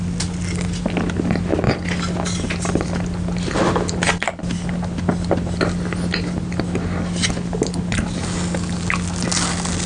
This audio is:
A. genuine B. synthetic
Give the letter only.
A